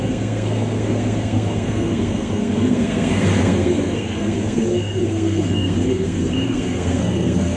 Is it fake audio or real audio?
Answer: fake